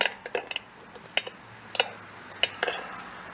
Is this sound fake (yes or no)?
no